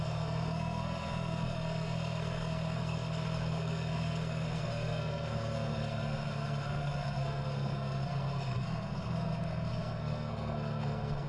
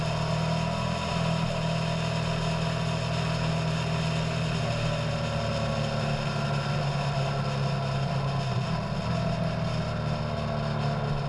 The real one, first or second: second